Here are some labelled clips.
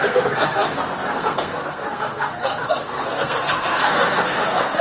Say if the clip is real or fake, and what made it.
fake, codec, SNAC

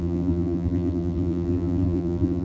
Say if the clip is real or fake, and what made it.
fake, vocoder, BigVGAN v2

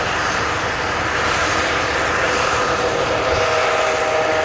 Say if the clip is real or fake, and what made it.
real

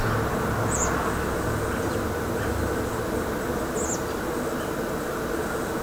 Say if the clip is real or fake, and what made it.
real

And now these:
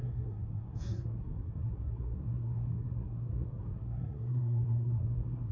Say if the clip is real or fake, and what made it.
fake, codec, SNAC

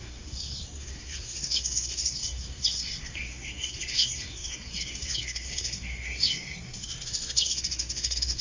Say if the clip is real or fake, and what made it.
fake, codec, SNAC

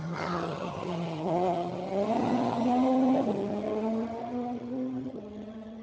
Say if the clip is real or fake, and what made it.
fake, vocoder, HiFi-GAN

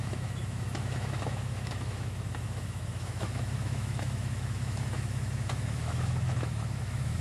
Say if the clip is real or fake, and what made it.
fake, autoencoder, DAC-VAE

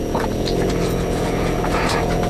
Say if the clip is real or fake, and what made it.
fake, vocoder, Vocos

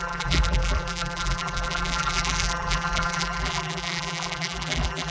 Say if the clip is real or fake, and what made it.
fake, vocoder, BigVGAN v2